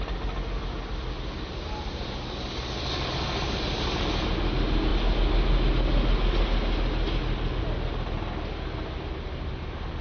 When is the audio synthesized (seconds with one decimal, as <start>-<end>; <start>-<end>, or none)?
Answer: none

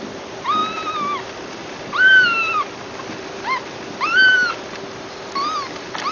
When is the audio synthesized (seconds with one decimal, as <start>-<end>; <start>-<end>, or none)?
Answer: none

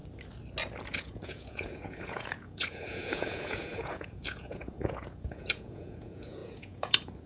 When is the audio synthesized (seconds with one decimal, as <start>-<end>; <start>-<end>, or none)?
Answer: 0.9-7.3

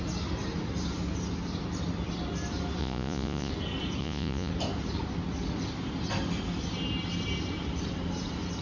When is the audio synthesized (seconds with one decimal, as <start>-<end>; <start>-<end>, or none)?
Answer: 2.8-3.5; 4.0-4.5

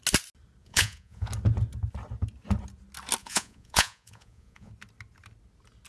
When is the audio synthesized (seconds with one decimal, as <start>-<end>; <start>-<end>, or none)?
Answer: 0.6-1.3; 3.2-4.7

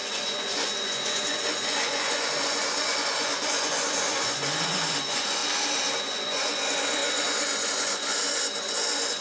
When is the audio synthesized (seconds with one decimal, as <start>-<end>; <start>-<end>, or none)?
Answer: 0.0-5.4; 6.0-9.2

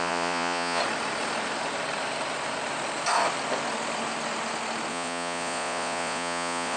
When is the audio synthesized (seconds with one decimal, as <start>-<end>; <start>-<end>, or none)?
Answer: 0.0-0.8; 4.9-6.8

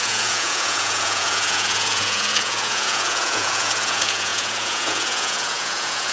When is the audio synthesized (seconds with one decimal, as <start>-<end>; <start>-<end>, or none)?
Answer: 0.0-6.1